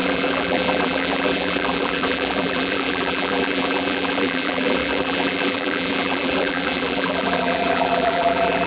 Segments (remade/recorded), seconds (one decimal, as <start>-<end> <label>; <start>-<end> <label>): 0.0-8.7 remade

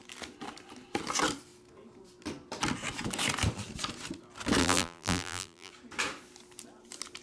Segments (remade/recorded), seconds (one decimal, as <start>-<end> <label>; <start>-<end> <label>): 0.0-4.6 recorded; 4.6-5.7 remade; 5.7-7.2 recorded

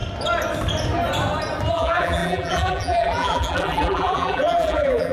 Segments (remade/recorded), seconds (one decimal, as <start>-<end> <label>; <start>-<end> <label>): 0.0-1.7 recorded; 1.7-5.1 remade

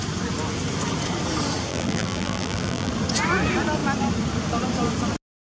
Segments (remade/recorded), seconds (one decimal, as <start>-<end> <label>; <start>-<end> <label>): 0.0-1.7 recorded; 1.7-2.9 remade; 2.9-5.4 recorded

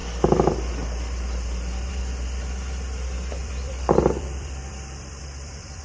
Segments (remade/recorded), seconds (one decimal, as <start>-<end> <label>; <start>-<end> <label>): 0.0-3.4 recorded; 3.4-5.8 remade

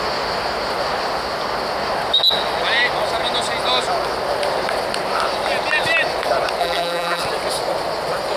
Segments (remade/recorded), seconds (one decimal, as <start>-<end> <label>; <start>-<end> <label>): 0.0-6.6 recorded; 6.6-7.2 remade; 7.2-8.4 recorded